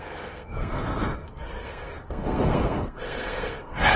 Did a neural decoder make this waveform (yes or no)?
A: yes